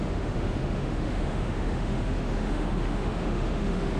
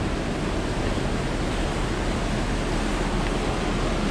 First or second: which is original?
second